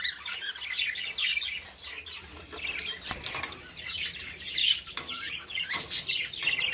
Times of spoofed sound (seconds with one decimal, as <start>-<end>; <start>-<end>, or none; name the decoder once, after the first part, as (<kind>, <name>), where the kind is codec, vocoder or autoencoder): 4.6-5.8 (codec, DAC)